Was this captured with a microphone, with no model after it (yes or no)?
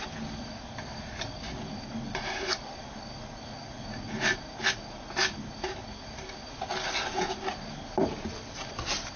yes